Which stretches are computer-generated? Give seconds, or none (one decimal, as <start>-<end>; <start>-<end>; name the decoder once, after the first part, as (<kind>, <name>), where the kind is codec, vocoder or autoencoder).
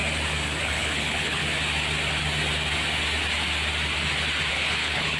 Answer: 0.6-1.4 (codec, HILCodec); 4.5-5.2